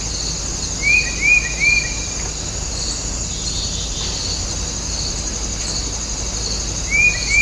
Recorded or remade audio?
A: recorded